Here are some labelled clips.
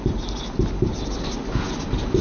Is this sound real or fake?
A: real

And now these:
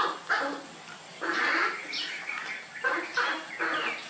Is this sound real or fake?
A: real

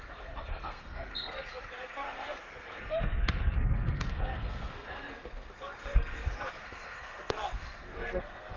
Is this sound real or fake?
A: fake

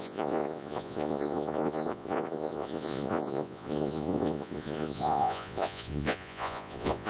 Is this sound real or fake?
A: fake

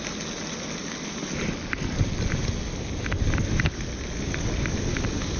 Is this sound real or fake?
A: real